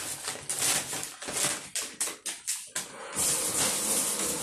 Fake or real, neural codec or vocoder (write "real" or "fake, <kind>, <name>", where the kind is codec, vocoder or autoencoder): real